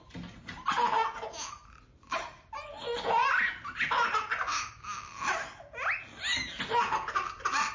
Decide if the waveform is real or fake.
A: real